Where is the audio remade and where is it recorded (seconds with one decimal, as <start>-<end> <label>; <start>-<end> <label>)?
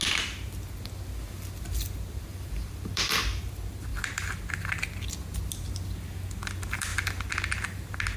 0.0-2.3 recorded; 2.3-3.4 remade; 3.4-8.2 recorded